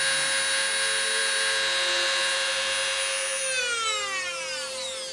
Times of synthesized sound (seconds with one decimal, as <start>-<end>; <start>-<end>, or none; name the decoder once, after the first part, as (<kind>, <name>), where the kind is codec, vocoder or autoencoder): none

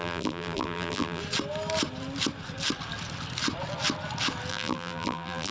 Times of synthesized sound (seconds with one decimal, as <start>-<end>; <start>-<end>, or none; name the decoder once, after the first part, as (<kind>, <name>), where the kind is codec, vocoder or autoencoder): 0.0-1.2 (vocoder, BigVGAN v2); 4.5-5.5

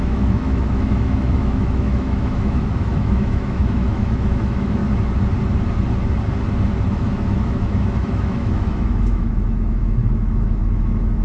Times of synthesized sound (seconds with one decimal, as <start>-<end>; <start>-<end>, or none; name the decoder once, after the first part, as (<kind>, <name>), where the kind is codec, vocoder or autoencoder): 0.0-4.8 (autoencoder, DAC-VAE); 6.9-11.2

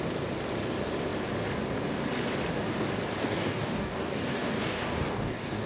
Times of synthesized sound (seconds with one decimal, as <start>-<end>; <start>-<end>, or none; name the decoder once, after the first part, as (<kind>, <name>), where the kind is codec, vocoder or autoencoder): 3.2-5.7 (codec, DAC)